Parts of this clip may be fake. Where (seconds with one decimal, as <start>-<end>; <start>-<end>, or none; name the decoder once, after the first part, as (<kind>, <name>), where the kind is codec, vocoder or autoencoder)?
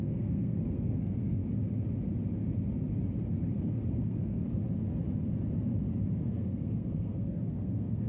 0.0-1.4 (codec, SNAC); 3.9-4.4; 6.2-8.1